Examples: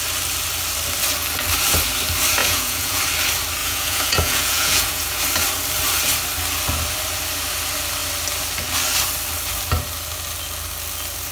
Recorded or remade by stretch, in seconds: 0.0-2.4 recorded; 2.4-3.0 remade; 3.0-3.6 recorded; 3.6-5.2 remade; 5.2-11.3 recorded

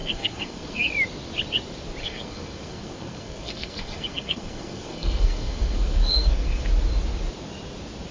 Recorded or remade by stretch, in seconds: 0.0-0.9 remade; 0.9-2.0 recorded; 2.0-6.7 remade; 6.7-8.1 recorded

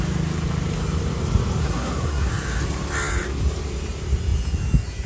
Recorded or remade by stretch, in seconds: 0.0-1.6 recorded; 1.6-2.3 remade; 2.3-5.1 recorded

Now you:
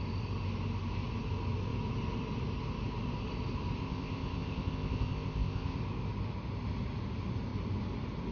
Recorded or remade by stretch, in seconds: 0.0-3.8 recorded; 3.8-5.8 remade; 5.8-8.3 recorded